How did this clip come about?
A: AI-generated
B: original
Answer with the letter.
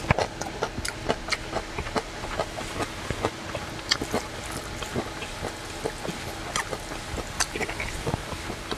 B